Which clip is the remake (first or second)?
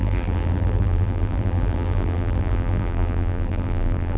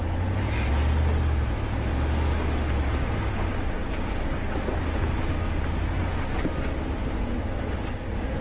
first